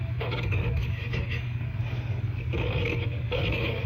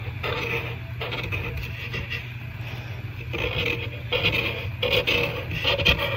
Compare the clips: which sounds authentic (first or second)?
second